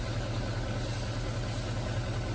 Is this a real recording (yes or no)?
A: yes